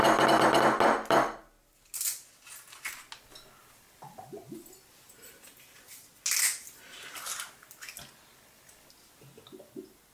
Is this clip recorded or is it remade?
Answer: recorded